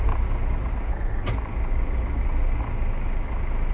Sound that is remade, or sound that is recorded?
recorded